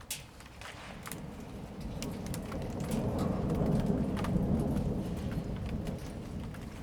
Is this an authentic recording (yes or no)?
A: yes